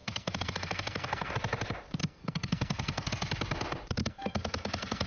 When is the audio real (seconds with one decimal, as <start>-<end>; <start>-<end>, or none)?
1.3-2.0; 3.1-4.0